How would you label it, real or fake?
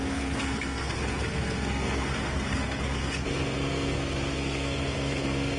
fake